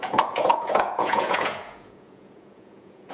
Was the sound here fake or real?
fake